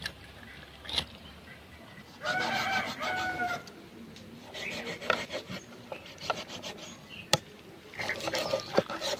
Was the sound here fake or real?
fake